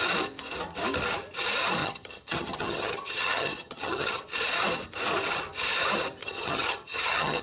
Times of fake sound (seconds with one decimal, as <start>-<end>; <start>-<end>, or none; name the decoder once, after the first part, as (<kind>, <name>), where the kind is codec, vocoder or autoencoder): 1.8-4.2 (vocoder, HiFi-GAN); 6.2-7.4